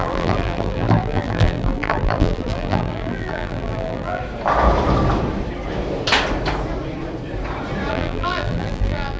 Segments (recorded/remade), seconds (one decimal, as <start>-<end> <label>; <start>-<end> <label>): 0.0-4.2 remade; 4.2-7.9 recorded; 7.9-9.2 remade